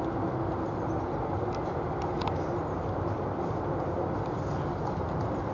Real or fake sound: real